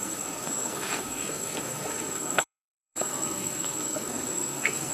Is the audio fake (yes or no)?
yes